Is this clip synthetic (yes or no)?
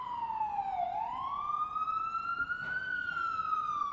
no